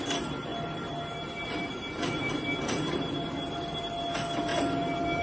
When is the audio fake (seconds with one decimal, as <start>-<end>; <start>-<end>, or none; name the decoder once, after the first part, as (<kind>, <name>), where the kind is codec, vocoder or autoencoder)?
none